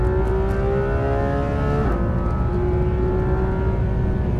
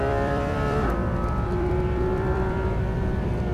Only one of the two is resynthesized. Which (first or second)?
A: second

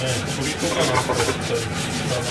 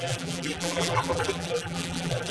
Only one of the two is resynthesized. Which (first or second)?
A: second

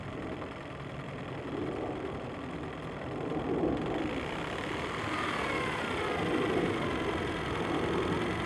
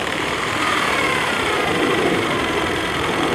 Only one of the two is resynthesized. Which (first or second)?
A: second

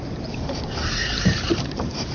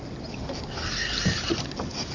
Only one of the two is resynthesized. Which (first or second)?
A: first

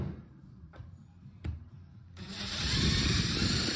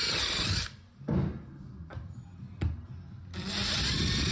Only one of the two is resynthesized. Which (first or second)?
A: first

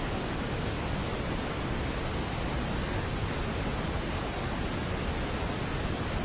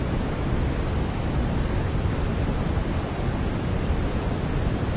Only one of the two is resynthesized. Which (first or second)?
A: second